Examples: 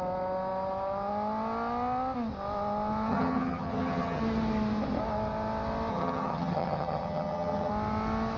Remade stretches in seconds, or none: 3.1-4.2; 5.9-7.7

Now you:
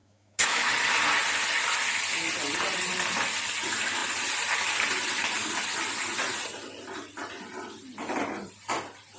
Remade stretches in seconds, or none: 0.0-0.7

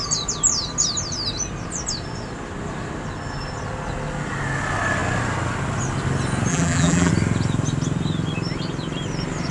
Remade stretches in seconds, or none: 6.5-7.1

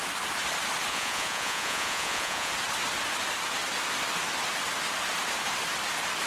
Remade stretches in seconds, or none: 0.9-2.5

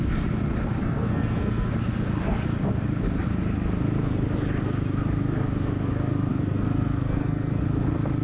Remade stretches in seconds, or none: 0.8-1.7; 6.3-7.6

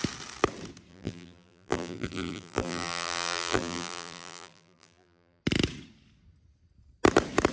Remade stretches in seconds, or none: 0.9-5.4

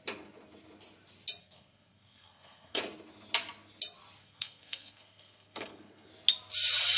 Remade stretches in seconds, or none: 1.4-2.8; 4.2-6.1